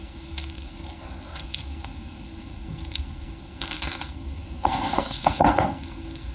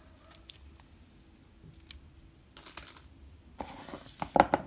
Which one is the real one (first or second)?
second